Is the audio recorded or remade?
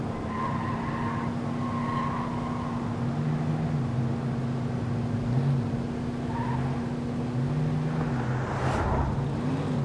recorded